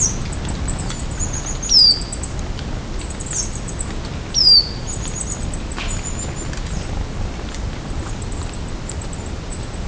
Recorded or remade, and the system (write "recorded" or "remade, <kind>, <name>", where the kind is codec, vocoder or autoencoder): recorded